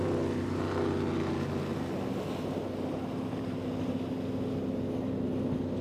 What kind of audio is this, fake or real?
real